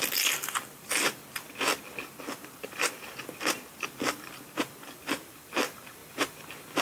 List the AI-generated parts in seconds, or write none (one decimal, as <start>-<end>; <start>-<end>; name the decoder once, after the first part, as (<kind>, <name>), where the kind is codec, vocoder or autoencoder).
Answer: 0.0-1.2 (vocoder, BigVGAN v2); 2.2-6.0

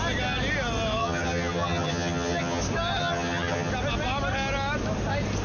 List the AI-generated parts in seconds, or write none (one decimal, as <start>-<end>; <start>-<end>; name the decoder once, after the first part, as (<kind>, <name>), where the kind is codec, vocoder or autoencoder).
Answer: 1.0-2.6 (vocoder, HiFi-GAN); 3.0-3.7

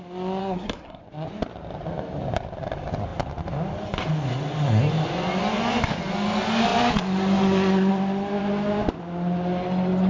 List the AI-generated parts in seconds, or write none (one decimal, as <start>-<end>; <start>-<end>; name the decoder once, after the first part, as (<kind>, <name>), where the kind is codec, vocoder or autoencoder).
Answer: 0.4-1.0 (codec, SNAC)

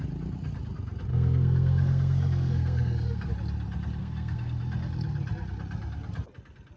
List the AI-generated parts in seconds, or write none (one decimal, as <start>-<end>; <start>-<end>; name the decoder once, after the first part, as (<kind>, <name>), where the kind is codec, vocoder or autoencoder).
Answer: 1.1-3.3 (codec, SNAC); 4.0-4.6

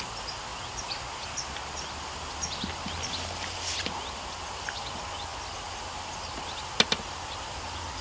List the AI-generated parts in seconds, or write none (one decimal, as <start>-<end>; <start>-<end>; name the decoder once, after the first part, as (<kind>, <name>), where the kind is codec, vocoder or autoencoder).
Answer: none

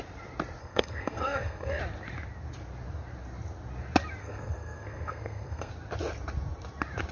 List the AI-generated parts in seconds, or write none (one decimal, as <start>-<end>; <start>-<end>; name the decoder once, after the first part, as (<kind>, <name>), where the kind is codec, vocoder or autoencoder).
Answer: 0.6-1.8 (codec, SNAC); 4.2-5.7

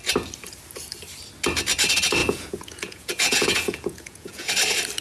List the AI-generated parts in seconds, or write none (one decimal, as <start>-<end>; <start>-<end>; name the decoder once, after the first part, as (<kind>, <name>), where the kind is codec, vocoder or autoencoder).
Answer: 2.2-4.5 (vocoder, Vocos)